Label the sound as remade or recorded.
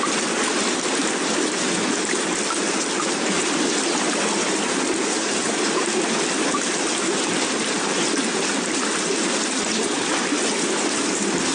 recorded